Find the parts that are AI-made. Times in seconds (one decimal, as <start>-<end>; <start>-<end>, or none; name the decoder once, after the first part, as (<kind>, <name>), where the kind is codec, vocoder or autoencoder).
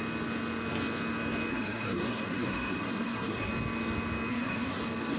1.5-3.5 (codec, SNAC); 4.3-4.8